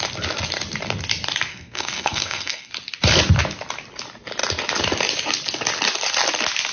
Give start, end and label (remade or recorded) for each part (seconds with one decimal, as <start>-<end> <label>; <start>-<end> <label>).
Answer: 0.0-1.5 recorded; 1.5-2.7 remade; 2.7-6.7 recorded